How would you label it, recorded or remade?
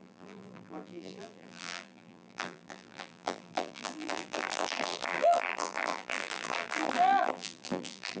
remade